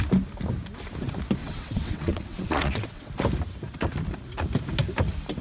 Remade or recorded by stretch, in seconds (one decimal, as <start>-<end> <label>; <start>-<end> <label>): 0.0-1.4 recorded; 1.4-3.1 remade; 3.1-5.4 recorded